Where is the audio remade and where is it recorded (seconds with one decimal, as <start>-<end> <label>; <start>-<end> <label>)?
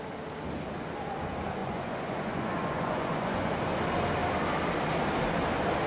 0.0-1.6 recorded; 1.6-3.5 remade; 3.5-5.9 recorded